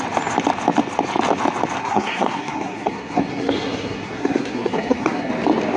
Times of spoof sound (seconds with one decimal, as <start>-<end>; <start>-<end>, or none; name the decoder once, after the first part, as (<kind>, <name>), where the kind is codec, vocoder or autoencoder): 1.8-5.3 (codec, SNAC)